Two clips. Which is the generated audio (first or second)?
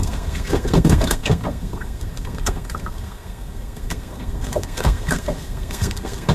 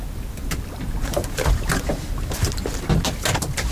first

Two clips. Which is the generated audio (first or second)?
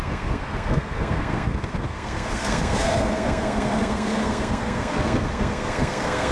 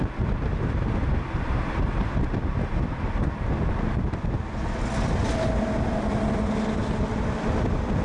first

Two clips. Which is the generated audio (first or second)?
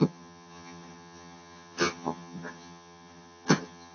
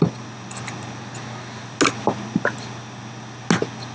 first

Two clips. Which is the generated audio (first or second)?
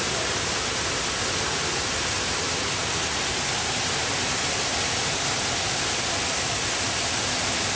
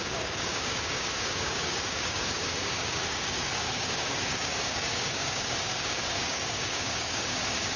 second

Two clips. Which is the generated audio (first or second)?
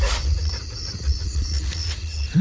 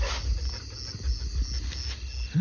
first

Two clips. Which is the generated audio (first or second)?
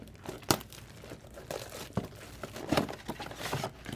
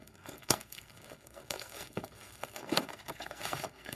second